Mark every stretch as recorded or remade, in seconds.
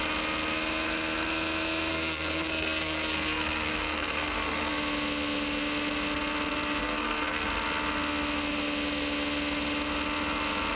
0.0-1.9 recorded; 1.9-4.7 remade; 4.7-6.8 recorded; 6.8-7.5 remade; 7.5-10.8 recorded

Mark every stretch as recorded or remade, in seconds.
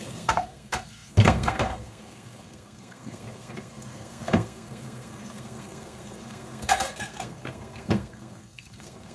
0.0-9.1 remade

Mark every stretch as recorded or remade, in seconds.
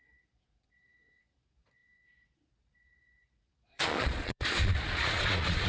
0.0-5.7 remade